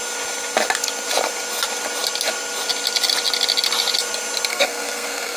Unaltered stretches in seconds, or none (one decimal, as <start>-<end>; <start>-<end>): 0.0-4.5